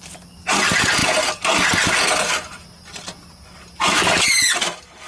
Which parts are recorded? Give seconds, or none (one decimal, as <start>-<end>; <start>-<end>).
0.0-5.1

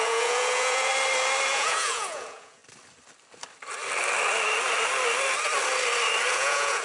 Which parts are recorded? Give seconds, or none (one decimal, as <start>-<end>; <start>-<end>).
0.9-1.5; 2.6-6.3

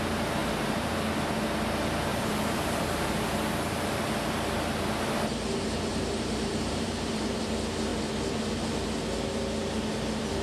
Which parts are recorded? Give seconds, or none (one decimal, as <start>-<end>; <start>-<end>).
0.0-0.4; 0.9-2.1; 3.1-5.9; 7.4-10.4

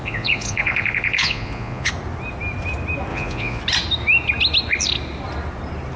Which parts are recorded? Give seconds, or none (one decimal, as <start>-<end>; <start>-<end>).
1.9-3.1; 3.6-6.0

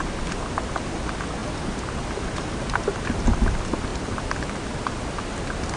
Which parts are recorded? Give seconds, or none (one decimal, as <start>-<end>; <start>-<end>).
0.0-3.9; 5.2-5.8

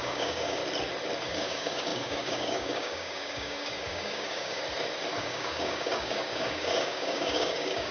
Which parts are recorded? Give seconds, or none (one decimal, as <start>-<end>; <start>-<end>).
0.6-1.2; 4.6-5.2